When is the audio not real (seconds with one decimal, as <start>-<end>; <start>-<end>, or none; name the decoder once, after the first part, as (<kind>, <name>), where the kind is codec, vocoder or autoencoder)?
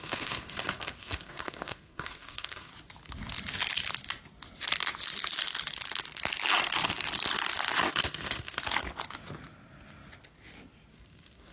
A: 0.0-2.7 (codec, SNAC); 7.9-8.6; 10.9-11.5